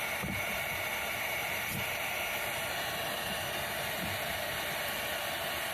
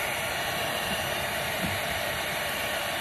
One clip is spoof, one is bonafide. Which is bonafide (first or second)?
first